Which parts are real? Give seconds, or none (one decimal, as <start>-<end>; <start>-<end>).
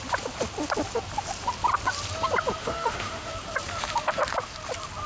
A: 0.0-2.6; 3.3-5.1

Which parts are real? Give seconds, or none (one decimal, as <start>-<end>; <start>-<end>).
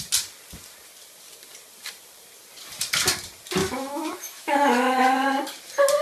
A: 0.0-3.6; 5.1-6.0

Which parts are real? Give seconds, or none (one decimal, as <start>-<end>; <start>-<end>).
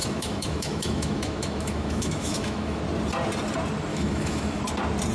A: 2.8-3.9; 4.6-5.1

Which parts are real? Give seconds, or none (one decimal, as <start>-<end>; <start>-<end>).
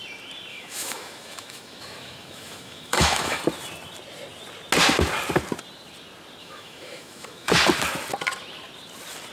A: 0.0-0.5; 3.4-6.4; 7.5-9.3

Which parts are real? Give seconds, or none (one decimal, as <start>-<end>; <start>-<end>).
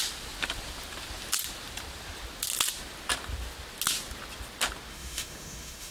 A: 0.0-4.9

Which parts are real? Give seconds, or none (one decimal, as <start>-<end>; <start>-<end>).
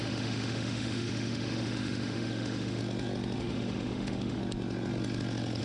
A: 2.8-3.4; 4.4-5.6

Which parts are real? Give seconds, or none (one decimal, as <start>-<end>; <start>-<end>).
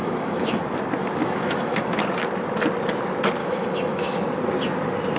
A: 0.6-1.2; 2.0-3.4; 4.2-5.2